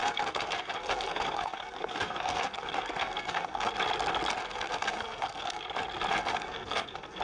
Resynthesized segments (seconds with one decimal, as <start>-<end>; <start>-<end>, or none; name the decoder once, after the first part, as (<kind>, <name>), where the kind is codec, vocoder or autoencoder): 0.0-3.7 (codec, SNAC); 4.4-5.6; 6.1-7.2